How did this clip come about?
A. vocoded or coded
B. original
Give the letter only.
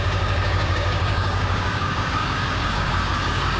A